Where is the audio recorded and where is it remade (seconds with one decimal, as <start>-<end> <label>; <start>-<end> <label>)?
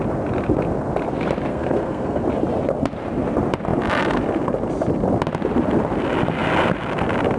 0.0-1.5 recorded; 1.5-2.2 remade; 2.2-7.4 recorded